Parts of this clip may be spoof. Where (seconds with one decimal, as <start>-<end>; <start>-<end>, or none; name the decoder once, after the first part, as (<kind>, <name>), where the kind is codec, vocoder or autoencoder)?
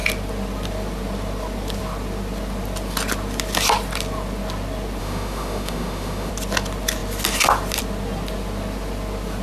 5.0-6.3 (autoencoder, DAC-VAE)